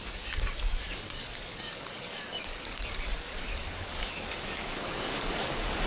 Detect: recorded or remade remade